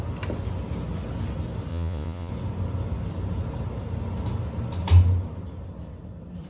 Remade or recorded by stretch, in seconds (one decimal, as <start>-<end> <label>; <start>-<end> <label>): 0.0-1.7 recorded; 1.7-2.3 remade; 2.3-6.5 recorded